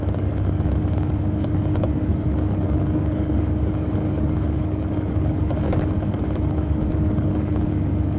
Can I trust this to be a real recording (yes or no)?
no